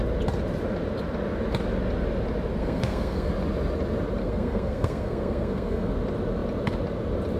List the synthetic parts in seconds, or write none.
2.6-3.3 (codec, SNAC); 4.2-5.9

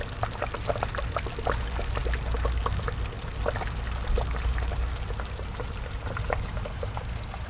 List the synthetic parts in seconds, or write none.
none

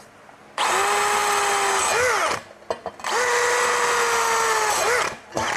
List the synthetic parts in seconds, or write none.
none

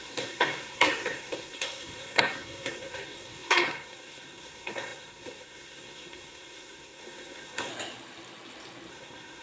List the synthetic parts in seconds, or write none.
0.0-7.7 (codec, SNAC); 8.9-9.4

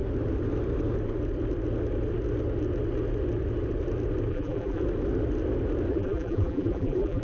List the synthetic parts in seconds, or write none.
4.3-4.8 (vocoder, BigVGAN v2); 5.9-7.2

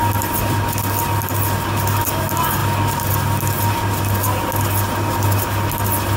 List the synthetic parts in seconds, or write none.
none

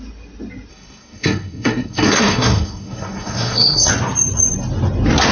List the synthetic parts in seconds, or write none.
0.7-3.9 (codec, SNAC)